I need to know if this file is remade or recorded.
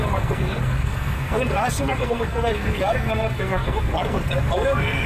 remade